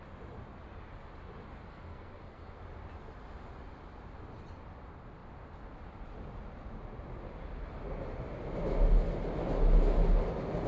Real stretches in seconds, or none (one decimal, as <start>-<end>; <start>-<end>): 0.0-1.7; 2.6-10.7